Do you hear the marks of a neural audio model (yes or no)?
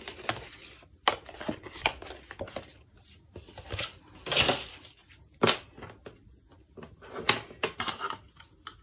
no